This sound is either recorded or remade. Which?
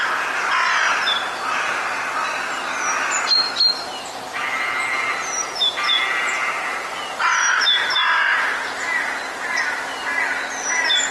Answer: recorded